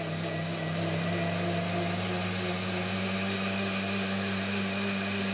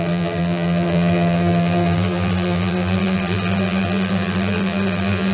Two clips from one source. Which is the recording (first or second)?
first